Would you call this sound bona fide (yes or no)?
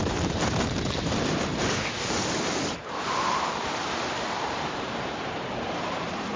no